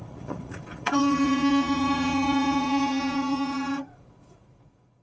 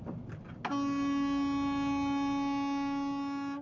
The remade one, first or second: first